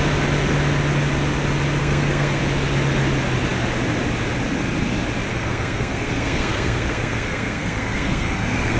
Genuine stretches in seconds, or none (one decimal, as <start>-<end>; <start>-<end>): 0.0-1.8; 2.4-5.3